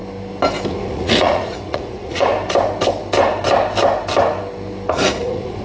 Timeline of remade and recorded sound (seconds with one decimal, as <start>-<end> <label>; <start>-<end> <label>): 0.0-0.7 recorded; 0.7-2.3 remade; 2.3-4.9 recorded; 4.9-5.6 remade